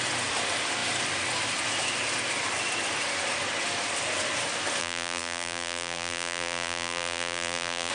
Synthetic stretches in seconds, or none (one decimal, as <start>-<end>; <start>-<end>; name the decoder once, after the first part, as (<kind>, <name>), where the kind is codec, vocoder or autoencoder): 4.8-7.9 (vocoder, BigVGAN v2)